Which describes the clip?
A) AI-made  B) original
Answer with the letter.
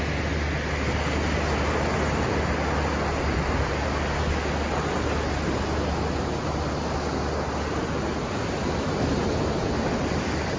B